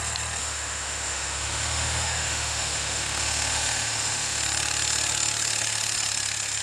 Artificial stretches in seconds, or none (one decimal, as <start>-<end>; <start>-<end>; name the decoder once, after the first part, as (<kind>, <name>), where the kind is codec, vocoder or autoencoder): 0.4-4.4 (autoencoder, DAC-VAE)